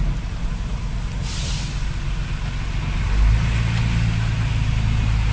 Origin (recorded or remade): recorded